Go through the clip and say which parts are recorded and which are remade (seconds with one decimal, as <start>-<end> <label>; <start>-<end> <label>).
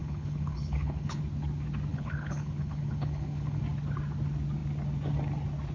0.0-1.2 remade; 1.2-1.9 recorded; 1.9-3.6 remade; 3.6-5.7 recorded